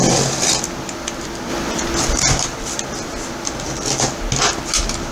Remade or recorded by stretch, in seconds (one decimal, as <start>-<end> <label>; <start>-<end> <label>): 0.0-5.1 recorded